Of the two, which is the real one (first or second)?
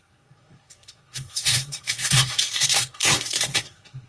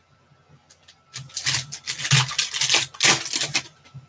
second